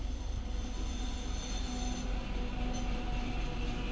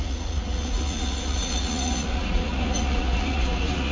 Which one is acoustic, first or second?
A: first